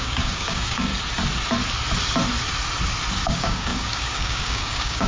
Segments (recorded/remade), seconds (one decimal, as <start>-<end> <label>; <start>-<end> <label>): 0.0-0.9 remade; 0.9-3.3 recorded; 3.3-5.1 remade